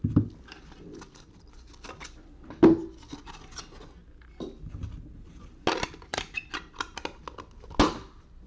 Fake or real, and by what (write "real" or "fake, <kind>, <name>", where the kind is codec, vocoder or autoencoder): real